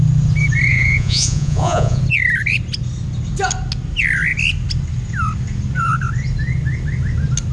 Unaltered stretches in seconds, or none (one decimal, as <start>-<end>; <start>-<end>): 0.0-0.7; 2.0-7.5